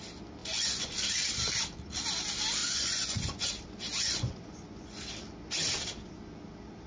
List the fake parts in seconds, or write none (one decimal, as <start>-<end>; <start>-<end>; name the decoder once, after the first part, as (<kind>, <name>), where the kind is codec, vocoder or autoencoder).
0.4-0.9 (vocoder, Vocos); 2.6-3.5; 3.9-5.0